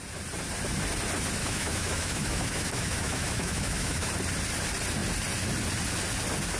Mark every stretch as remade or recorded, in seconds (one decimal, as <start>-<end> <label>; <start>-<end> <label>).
0.0-1.4 recorded; 1.4-4.1 remade; 4.1-6.6 recorded